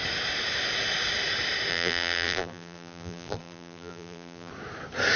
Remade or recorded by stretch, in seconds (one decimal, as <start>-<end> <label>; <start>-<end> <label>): 0.0-1.7 recorded; 1.7-4.5 remade; 4.5-5.2 recorded